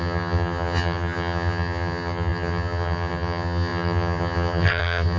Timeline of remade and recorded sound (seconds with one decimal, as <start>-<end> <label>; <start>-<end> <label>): 0.0-5.2 remade